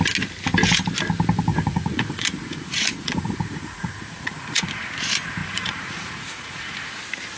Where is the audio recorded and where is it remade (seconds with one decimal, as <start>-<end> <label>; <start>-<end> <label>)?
0.0-1.5 recorded; 1.5-4.9 remade; 4.9-5.4 recorded; 5.4-7.0 remade; 7.0-7.4 recorded

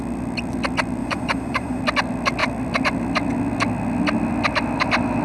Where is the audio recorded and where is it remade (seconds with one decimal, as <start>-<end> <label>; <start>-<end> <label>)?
0.0-1.0 recorded; 1.0-1.8 remade; 1.8-5.2 recorded

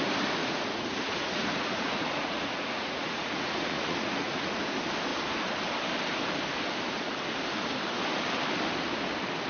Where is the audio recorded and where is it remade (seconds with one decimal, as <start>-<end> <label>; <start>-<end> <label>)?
0.0-0.4 recorded; 0.4-4.6 remade; 4.6-9.5 recorded

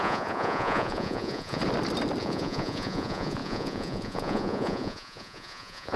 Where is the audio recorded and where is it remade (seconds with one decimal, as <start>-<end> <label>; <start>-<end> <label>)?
0.0-1.6 remade; 1.6-2.2 recorded; 2.2-6.0 remade